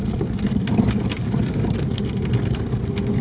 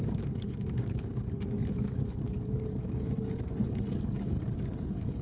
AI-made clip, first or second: second